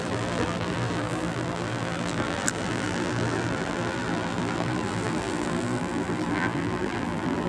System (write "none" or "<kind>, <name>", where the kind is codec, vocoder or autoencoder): vocoder, BigVGAN v2